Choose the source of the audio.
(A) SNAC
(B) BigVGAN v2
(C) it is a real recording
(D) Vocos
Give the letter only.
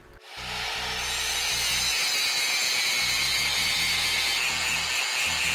C